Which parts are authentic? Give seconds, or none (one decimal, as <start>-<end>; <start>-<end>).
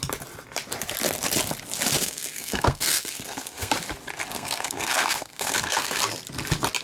0.0-2.0; 3.7-4.3; 6.0-6.8